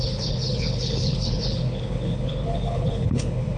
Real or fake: fake